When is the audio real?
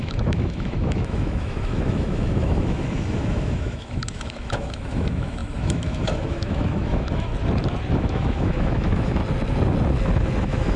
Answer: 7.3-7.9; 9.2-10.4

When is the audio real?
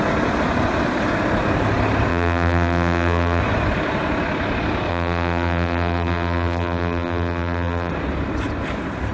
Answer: 0.0-2.1; 3.4-4.9; 7.9-9.1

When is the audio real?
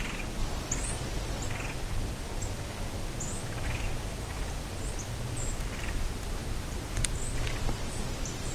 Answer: 0.4-5.0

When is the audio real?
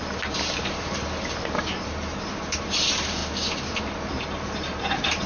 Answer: 0.0-0.6; 3.2-3.8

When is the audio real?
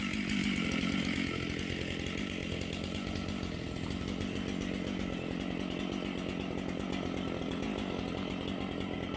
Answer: 0.0-9.2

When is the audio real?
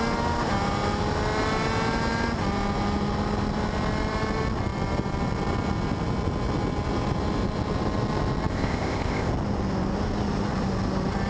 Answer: 0.0-8.5; 9.3-11.3